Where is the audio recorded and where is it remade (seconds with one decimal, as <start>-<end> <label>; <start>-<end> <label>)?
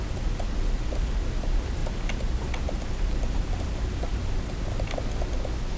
0.0-5.8 recorded